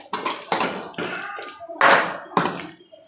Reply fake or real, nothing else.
real